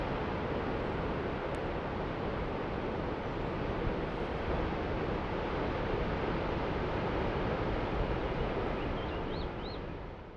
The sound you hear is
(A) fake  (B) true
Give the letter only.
B